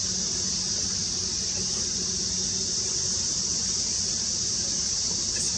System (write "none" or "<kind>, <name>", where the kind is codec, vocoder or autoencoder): none